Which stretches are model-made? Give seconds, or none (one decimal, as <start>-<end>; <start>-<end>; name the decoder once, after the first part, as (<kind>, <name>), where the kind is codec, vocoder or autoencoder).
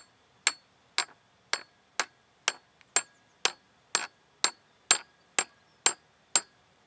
none